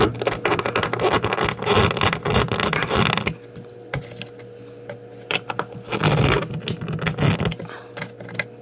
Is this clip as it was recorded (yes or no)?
yes